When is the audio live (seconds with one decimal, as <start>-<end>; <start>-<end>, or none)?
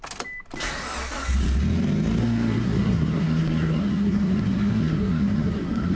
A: 0.0-2.2